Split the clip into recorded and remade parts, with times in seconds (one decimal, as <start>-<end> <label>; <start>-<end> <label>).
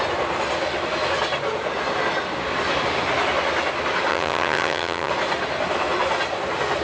0.0-4.1 recorded; 4.1-5.1 remade; 5.1-6.8 recorded